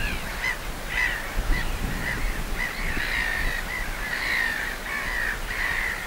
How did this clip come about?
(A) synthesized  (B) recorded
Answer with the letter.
B